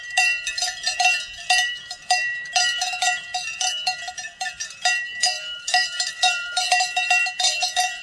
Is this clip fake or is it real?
fake